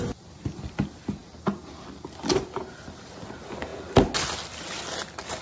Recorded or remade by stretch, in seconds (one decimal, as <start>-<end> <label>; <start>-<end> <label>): 0.0-5.4 recorded

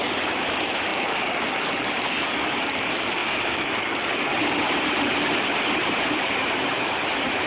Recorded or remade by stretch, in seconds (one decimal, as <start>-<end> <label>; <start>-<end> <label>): 0.0-4.3 remade; 4.3-7.5 recorded

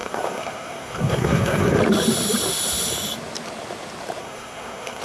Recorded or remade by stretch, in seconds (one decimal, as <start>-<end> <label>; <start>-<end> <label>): 0.0-1.8 remade; 1.8-4.2 recorded; 4.2-5.0 remade

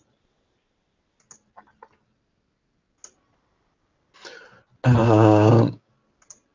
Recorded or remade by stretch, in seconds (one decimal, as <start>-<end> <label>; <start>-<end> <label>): 0.0-5.0 recorded; 5.0-5.9 remade; 5.9-6.5 recorded

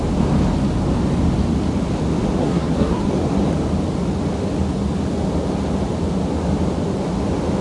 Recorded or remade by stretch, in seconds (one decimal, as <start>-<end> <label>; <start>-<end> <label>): 0.0-2.4 recorded; 2.4-3.1 remade; 3.1-7.6 recorded

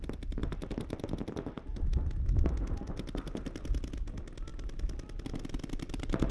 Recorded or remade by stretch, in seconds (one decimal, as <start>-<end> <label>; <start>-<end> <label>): 0.0-6.3 recorded

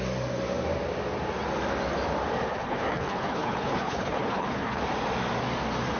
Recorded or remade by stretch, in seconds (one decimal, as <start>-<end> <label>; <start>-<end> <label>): 0.0-2.5 recorded; 2.5-4.8 remade; 4.8-6.0 recorded

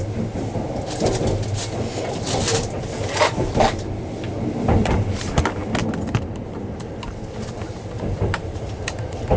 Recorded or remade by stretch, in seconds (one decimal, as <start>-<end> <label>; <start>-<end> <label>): 0.0-2.1 recorded; 2.1-5.6 remade; 5.6-7.0 recorded; 7.0-9.4 remade